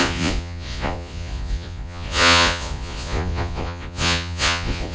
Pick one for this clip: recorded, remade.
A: remade